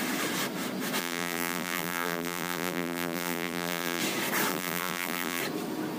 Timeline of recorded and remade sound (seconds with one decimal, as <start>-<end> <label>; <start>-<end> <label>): 0.0-1.0 recorded; 1.0-4.0 remade; 4.0-4.5 recorded; 4.5-5.4 remade; 5.4-6.0 recorded